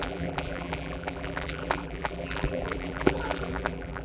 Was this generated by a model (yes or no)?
yes